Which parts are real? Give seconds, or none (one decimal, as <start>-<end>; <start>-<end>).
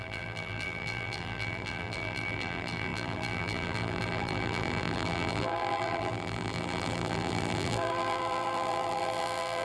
none